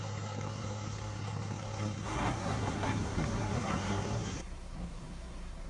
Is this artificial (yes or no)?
yes